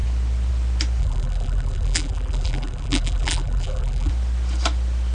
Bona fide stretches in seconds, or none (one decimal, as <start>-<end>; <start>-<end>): 0.0-1.0; 4.1-5.1